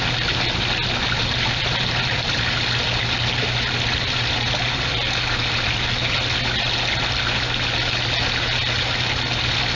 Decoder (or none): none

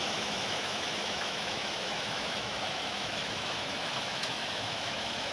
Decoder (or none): autoencoder, DAC-VAE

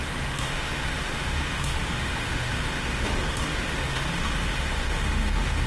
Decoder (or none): autoencoder, DAC-VAE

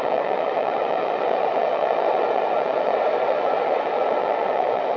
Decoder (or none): vocoder, WaveNeXt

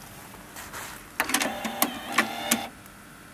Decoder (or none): none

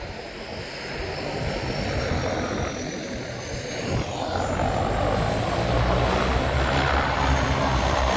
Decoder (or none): none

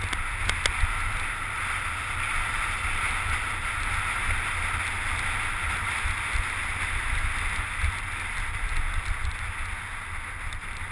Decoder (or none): none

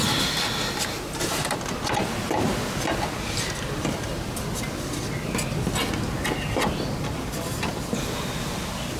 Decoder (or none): none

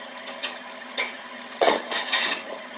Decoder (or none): vocoder, HiFi-GAN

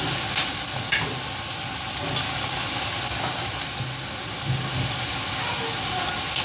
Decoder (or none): none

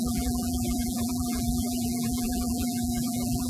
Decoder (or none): vocoder, BigVGAN v2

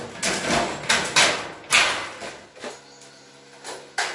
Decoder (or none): none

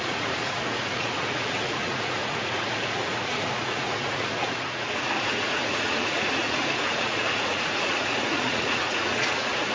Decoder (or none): vocoder, Vocos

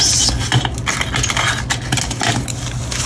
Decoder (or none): none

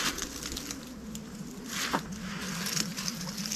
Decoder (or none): none